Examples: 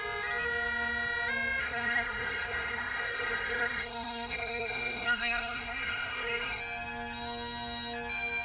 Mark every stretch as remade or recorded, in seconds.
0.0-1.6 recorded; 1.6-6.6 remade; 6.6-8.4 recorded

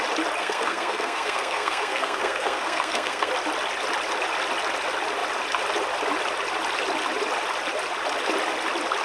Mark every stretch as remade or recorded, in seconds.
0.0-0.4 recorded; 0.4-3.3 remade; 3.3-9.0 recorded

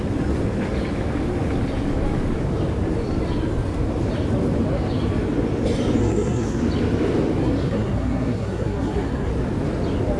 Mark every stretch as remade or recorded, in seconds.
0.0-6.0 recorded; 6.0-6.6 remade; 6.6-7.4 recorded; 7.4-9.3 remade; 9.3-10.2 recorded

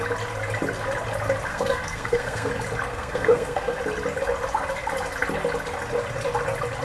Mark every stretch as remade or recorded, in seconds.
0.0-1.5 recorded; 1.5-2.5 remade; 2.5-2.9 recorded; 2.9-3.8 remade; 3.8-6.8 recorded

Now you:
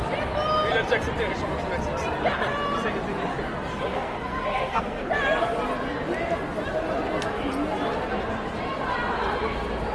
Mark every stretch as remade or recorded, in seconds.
0.0-3.9 recorded; 3.9-5.1 remade; 5.1-9.9 recorded

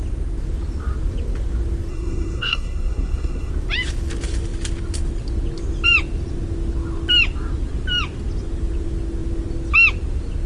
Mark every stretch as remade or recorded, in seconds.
0.0-1.9 recorded; 1.9-3.5 remade; 3.5-10.5 recorded

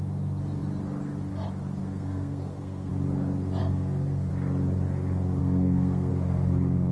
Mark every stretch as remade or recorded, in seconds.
0.0-1.8 recorded; 1.8-2.9 remade; 2.9-3.6 recorded; 3.6-4.3 remade; 4.3-5.4 recorded; 5.4-6.1 remade; 6.1-6.9 recorded

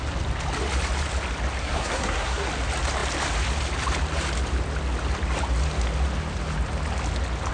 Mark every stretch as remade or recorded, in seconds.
0.0-1.6 recorded; 1.6-2.5 remade; 2.5-7.5 recorded